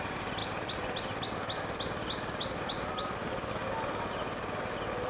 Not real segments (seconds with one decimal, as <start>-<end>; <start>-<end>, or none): none